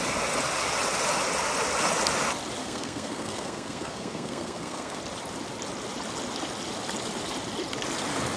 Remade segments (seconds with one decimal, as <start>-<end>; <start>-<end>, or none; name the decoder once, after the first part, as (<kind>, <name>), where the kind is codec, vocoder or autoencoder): 2.6-5.0 (codec, SNAC)